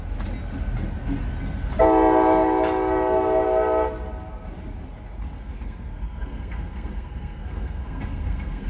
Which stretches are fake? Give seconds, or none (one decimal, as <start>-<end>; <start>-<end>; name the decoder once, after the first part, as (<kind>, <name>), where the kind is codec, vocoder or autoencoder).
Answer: 5.4-8.7 (codec, SNAC)